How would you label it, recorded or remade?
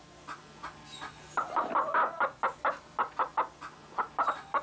recorded